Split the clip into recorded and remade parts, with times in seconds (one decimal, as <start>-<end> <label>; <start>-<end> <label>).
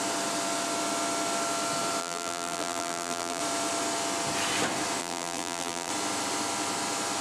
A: 0.0-2.0 recorded; 2.0-3.4 remade; 3.4-5.0 recorded; 5.0-5.9 remade; 5.9-7.2 recorded